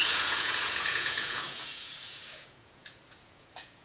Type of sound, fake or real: fake